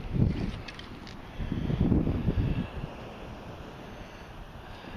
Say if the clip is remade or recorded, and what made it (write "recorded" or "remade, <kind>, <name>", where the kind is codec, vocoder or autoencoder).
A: recorded